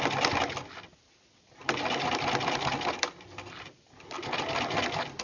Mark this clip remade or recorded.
recorded